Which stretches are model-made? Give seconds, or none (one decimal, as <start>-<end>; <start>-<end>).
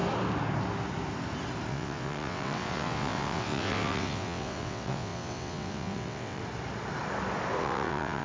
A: 1.7-6.4; 7.6-8.2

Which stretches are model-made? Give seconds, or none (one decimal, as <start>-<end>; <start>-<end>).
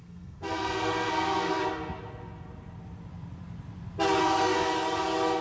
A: 0.0-1.6; 4.2-4.7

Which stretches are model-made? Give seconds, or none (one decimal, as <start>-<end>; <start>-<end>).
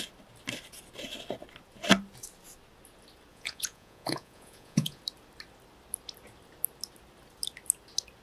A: 3.3-5.0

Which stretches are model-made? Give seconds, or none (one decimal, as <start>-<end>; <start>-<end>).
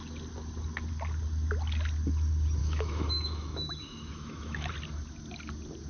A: 2.6-4.7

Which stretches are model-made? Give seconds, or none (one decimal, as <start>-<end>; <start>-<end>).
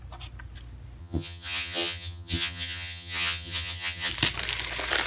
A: 1.0-4.1